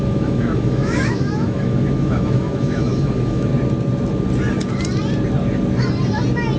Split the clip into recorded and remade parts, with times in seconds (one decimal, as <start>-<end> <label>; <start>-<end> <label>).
0.0-3.5 remade; 3.5-6.6 recorded